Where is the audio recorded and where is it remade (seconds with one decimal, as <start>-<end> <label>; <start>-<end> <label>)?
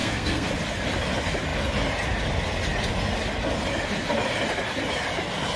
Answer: 0.0-0.5 remade; 0.5-5.6 recorded